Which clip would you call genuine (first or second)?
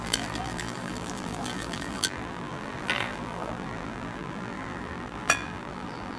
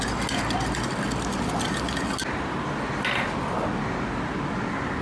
second